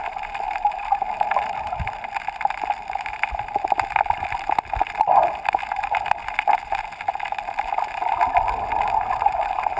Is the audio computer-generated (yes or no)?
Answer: yes